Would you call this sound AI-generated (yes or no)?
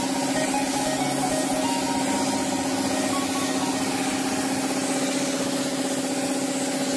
no